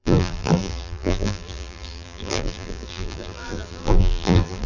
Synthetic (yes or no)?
yes